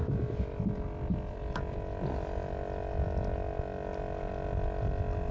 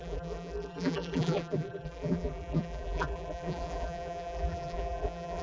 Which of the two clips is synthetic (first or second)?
second